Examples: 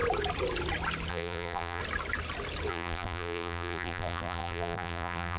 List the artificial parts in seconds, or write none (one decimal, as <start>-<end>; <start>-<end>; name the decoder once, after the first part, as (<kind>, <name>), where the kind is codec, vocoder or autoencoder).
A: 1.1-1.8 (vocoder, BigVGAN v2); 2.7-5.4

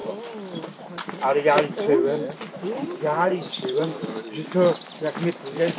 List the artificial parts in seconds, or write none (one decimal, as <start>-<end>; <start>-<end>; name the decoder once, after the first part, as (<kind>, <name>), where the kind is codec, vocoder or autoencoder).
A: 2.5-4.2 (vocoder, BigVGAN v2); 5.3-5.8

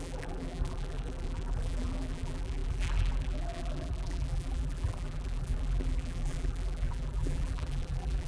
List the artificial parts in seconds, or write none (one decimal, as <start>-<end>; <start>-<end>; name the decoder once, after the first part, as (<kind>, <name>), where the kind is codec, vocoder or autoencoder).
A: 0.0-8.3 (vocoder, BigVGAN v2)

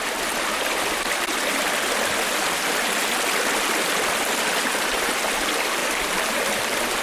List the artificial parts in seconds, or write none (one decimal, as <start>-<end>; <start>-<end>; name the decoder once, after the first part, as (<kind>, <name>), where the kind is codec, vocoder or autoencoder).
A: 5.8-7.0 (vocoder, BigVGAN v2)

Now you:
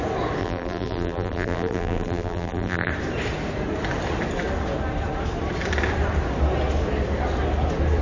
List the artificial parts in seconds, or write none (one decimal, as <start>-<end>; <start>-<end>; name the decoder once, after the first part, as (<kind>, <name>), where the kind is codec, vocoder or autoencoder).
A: 0.4-2.9 (vocoder, BigVGAN v2)